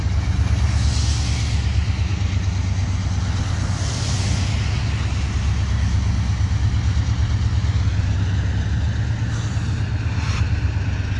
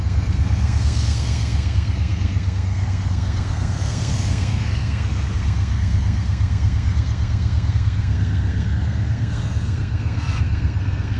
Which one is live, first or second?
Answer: first